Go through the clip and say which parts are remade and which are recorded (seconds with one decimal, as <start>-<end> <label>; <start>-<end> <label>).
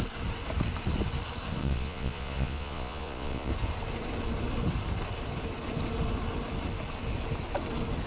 0.0-1.6 recorded; 1.6-3.5 remade; 3.5-8.1 recorded